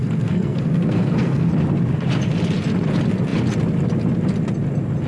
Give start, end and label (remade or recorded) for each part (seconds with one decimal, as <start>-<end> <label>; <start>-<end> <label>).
0.0-1.5 remade; 1.5-5.1 recorded